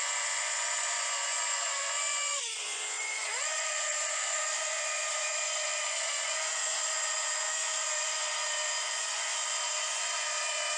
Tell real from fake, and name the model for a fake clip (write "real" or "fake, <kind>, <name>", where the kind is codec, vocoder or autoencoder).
fake, vocoder, Vocos